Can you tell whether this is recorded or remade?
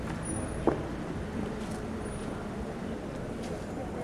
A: recorded